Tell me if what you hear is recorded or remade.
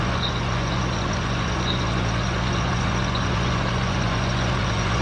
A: remade